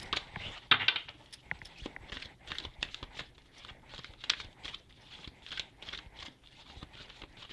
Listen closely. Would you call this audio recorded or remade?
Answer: recorded